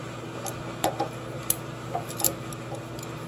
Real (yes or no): yes